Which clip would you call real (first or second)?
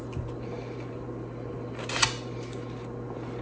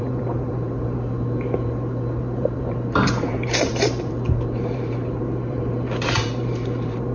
first